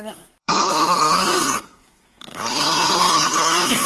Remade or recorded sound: remade